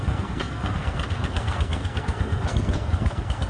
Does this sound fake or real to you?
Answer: fake